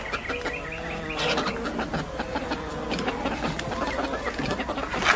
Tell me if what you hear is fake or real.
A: real